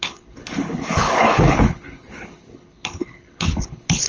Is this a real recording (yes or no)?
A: no